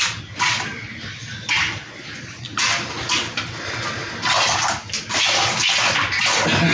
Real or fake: real